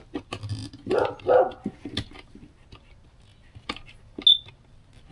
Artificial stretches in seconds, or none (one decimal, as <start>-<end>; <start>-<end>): none